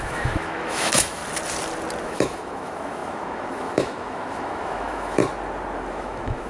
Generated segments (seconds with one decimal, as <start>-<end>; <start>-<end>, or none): 0.0-1.2; 2.0-5.2; 5.9-6.5